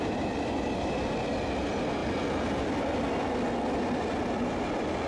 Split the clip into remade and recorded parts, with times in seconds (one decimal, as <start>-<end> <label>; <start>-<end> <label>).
0.0-5.1 recorded